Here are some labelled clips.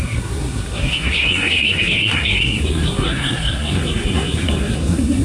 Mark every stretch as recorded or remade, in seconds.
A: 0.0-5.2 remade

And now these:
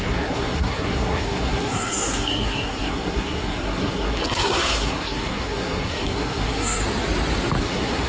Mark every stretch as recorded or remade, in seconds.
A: 0.0-6.8 remade; 6.8-7.6 recorded; 7.6-8.1 remade

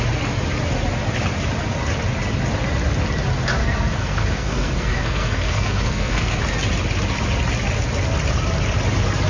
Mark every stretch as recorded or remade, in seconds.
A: 0.0-3.6 recorded; 3.6-6.4 remade; 6.4-9.3 recorded

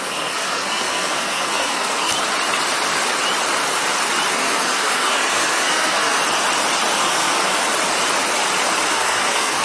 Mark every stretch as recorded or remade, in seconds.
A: 0.0-2.1 remade; 2.1-4.3 recorded; 4.3-6.2 remade; 6.2-7.0 recorded; 7.0-7.6 remade; 7.6-8.9 recorded; 8.9-9.6 remade